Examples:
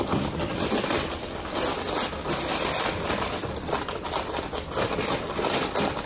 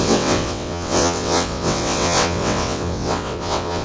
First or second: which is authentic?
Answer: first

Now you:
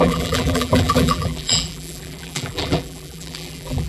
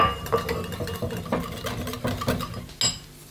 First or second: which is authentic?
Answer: second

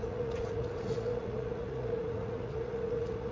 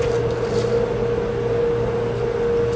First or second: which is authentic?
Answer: second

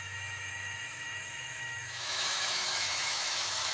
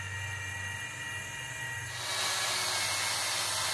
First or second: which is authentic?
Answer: second